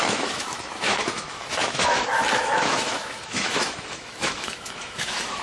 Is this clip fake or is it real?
fake